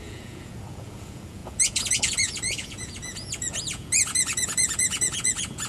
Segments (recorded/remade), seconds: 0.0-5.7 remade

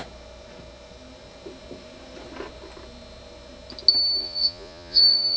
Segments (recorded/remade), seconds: 0.0-4.2 recorded; 4.2-5.4 remade

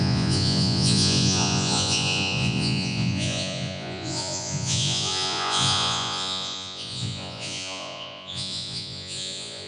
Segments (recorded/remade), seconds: 0.0-9.7 remade

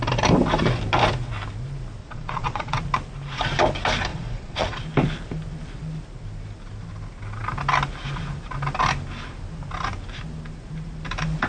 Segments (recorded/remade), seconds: 0.0-2.0 recorded; 2.0-2.8 remade; 2.8-4.1 recorded; 4.1-4.8 remade; 4.8-11.5 recorded

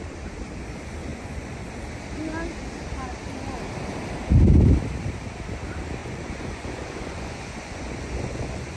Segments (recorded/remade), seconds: 0.0-1.1 recorded; 1.1-1.7 remade; 1.7-6.0 recorded; 6.0-8.8 remade